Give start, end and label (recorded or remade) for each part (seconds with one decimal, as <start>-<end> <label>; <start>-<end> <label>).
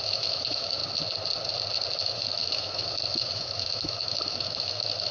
0.0-0.8 remade; 0.8-2.0 recorded; 2.0-5.1 remade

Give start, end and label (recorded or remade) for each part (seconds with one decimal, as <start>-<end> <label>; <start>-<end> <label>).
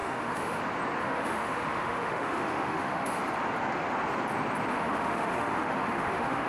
0.0-0.6 remade; 0.6-1.0 recorded; 1.0-3.2 remade; 3.2-4.7 recorded; 4.7-6.5 remade